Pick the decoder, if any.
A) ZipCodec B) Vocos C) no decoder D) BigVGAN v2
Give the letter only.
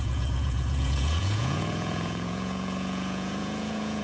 B